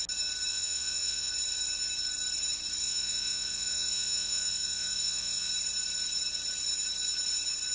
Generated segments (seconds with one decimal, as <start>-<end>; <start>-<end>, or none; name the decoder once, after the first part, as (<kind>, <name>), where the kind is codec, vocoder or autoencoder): 0.5-1.3 (vocoder, Vocos); 2.8-5.5